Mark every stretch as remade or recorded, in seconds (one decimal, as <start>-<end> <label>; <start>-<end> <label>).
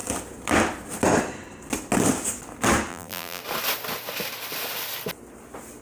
0.0-2.9 recorded; 2.9-3.4 remade; 3.4-5.8 recorded